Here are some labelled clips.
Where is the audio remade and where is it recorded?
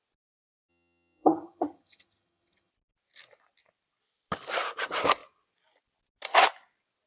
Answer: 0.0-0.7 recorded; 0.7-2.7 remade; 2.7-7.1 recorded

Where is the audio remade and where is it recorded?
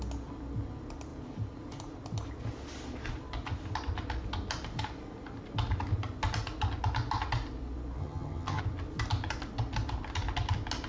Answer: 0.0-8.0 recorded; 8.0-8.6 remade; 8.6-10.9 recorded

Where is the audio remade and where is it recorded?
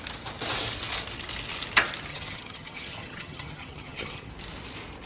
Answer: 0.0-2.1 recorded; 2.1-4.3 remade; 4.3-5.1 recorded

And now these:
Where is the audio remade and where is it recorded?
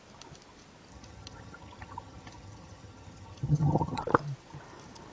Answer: 0.0-0.9 recorded; 0.9-4.0 remade; 4.0-5.1 recorded